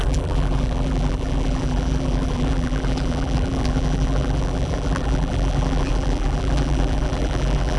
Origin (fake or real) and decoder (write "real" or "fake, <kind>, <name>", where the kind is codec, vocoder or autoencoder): fake, vocoder, BigVGAN v2